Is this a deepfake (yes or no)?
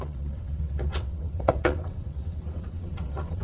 yes